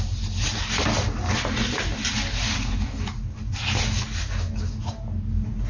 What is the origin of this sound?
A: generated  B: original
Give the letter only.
B